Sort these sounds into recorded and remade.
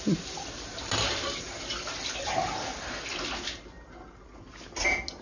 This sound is recorded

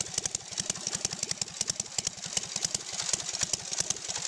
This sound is recorded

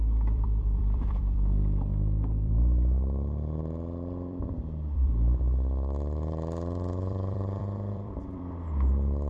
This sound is remade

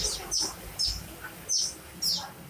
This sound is recorded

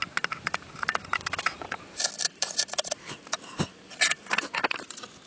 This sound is recorded